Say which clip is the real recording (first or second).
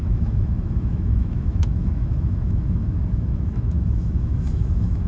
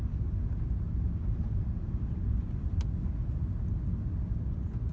second